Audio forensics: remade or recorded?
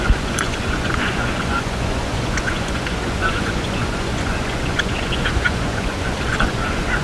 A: remade